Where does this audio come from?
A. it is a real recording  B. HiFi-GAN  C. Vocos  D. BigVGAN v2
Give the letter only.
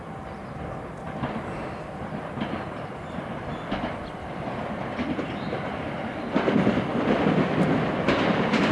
D